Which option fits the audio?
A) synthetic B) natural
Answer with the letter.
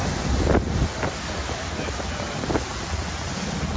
A